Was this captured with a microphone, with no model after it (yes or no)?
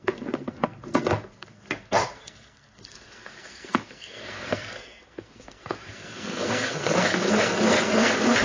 no